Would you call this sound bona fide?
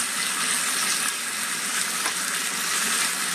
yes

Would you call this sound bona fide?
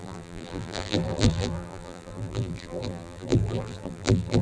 no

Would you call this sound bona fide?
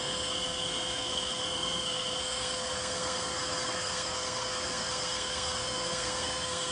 no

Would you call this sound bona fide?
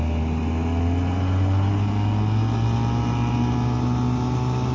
yes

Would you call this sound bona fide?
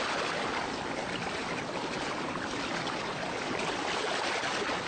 yes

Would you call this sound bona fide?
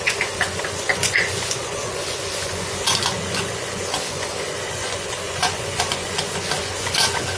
no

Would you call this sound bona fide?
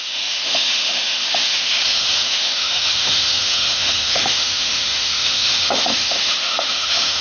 no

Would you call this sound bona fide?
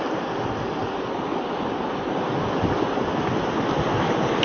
yes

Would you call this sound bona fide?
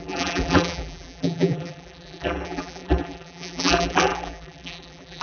no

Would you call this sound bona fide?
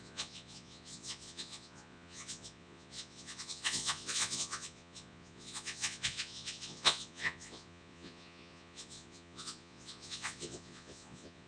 no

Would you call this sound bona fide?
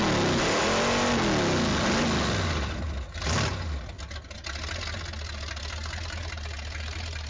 yes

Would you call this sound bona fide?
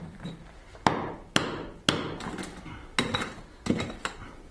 yes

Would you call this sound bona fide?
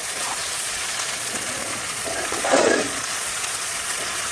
no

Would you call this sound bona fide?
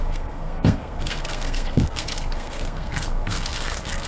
no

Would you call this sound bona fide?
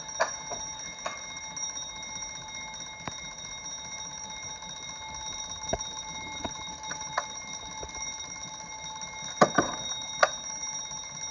yes